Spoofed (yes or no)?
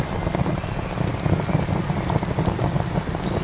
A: no